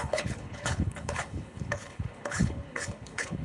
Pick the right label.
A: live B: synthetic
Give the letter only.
B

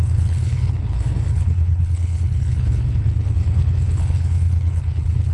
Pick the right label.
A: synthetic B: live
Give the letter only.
A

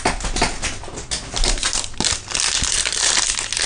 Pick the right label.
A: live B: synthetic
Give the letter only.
A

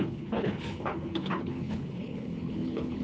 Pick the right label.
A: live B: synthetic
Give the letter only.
B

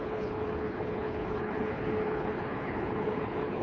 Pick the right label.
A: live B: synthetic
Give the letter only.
B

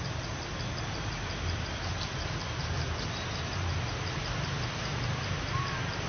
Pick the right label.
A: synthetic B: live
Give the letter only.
B